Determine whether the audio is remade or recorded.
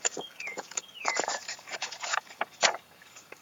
remade